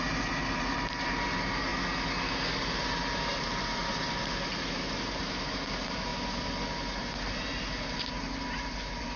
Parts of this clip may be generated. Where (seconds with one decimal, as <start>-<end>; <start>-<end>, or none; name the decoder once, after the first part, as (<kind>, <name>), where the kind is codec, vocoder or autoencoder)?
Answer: 0.0-1.7 (vocoder, BigVGAN v2); 2.6-6.1; 7.3-9.2